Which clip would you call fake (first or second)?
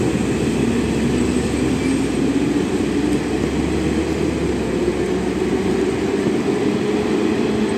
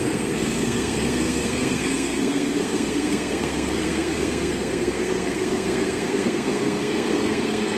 second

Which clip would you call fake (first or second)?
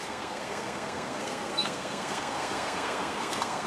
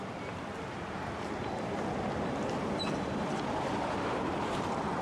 first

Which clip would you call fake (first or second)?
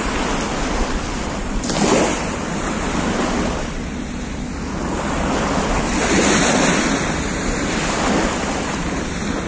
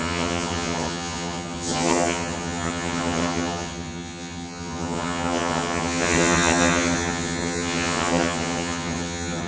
second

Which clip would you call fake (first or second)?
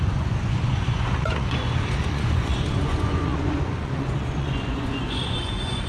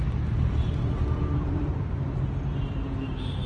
first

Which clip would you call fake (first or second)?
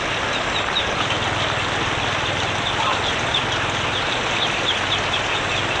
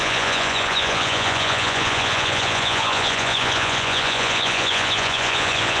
second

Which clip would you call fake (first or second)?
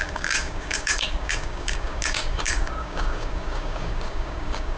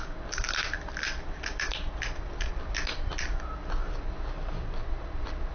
first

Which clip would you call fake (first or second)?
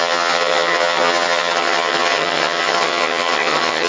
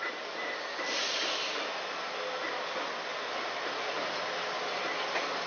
first